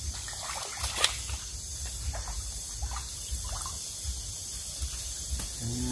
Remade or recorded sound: recorded